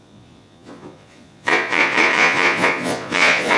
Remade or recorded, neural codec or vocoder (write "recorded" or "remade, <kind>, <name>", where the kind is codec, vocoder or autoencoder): remade, vocoder, Vocos